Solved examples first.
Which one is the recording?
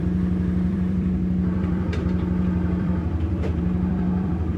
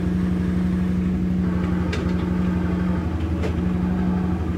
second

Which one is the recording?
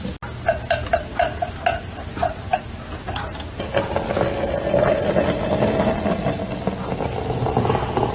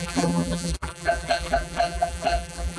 first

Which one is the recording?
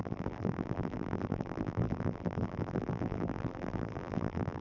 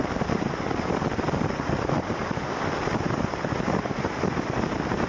second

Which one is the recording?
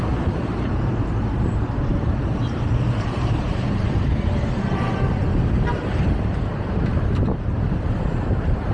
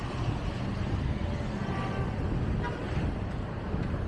second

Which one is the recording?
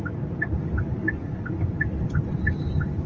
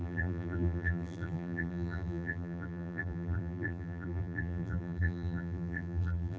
first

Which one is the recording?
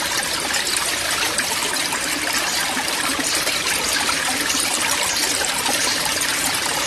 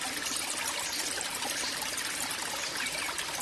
second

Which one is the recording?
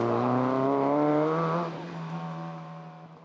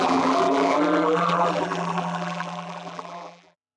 first